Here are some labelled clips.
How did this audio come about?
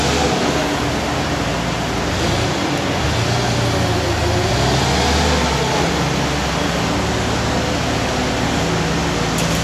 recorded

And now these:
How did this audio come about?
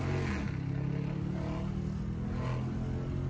recorded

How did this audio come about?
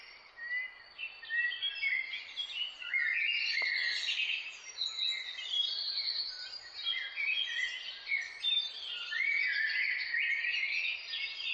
recorded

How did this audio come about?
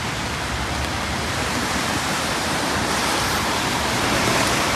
recorded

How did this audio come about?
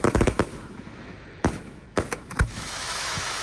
remade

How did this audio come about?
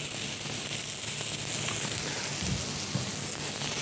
recorded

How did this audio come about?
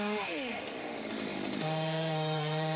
remade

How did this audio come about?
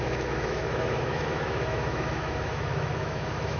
remade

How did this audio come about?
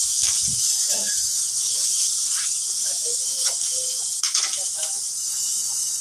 remade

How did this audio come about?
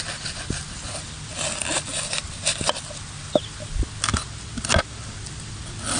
recorded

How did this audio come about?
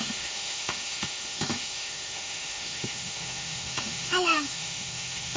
remade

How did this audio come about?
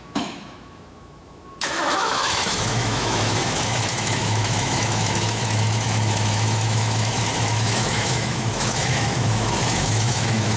remade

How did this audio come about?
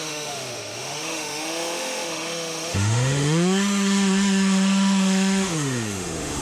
remade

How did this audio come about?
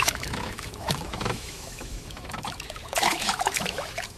remade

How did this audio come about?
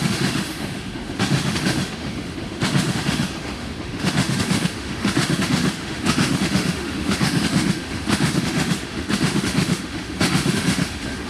remade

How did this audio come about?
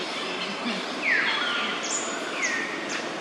recorded